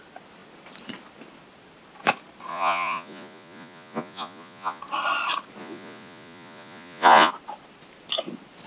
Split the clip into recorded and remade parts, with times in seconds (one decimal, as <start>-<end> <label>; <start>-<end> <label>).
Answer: 0.0-2.5 recorded; 2.5-4.8 remade; 4.8-5.6 recorded; 5.6-7.3 remade; 7.3-8.7 recorded